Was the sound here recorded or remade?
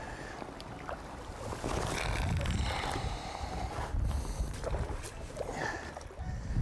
recorded